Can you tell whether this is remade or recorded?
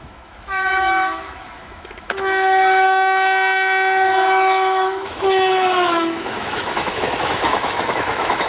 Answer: remade